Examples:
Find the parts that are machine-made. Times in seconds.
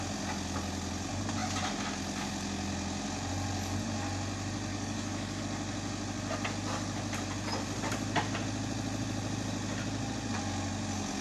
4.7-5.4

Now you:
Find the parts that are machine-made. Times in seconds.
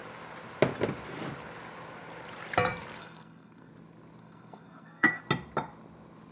3.0-3.7; 4.2-5.2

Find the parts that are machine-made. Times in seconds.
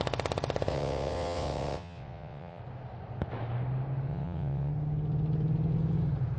0.7-2.6; 4.1-4.7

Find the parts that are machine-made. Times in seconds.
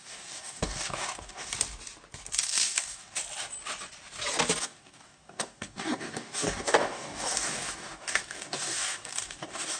0.0-1.5; 2.4-3.2; 4.6-9.8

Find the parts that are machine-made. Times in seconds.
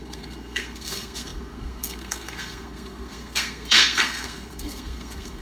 0.0-5.4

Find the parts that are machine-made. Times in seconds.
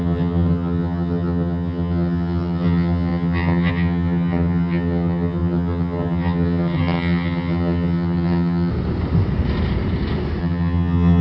0.0-8.7; 10.4-11.2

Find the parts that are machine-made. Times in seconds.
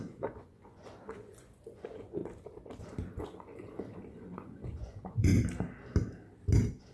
0.0-2.2; 2.8-5.3